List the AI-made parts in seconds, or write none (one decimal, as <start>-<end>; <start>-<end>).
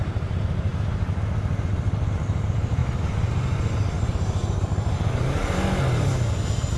none